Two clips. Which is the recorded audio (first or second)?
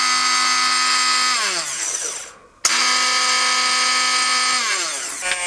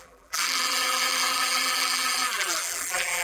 first